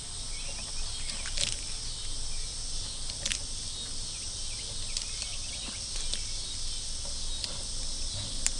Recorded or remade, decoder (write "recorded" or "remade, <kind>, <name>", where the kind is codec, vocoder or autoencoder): recorded